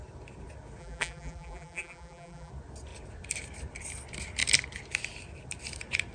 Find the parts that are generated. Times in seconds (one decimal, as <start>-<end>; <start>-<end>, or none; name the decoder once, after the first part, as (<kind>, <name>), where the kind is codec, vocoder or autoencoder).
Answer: 0.8-2.5 (vocoder, BigVGAN v2)